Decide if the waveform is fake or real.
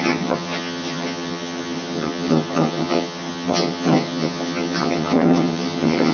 fake